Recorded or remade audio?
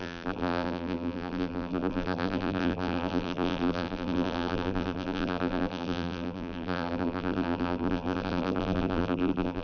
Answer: remade